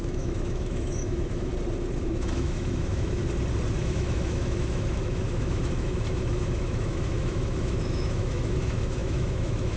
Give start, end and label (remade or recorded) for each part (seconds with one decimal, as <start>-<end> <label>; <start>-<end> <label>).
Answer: 0.0-1.5 remade; 1.5-2.0 recorded; 2.0-3.2 remade; 3.2-3.8 recorded; 3.8-9.8 remade